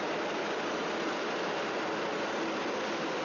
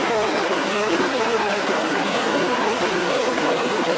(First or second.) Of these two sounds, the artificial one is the second